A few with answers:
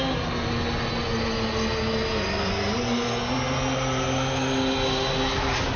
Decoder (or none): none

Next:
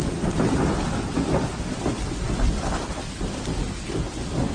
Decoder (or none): none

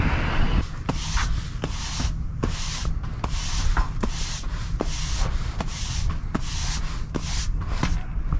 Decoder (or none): none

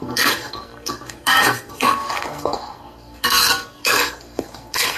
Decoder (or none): codec, SNAC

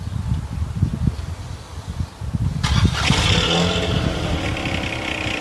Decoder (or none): none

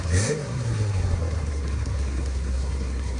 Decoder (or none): codec, SNAC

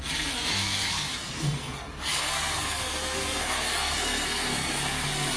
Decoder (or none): codec, SNAC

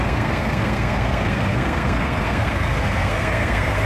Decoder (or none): codec, SNAC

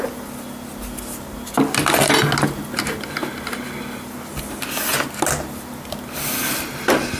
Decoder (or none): none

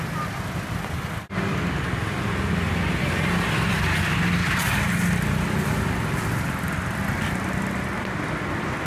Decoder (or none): none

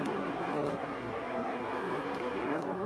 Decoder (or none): codec, SNAC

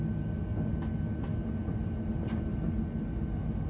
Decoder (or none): none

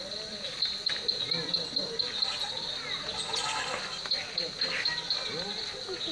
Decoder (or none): none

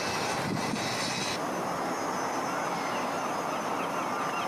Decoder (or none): none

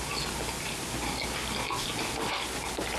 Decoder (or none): none